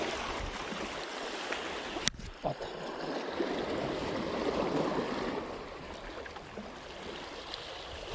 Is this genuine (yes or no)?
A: yes